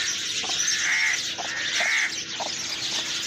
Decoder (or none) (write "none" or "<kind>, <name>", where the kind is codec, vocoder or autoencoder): none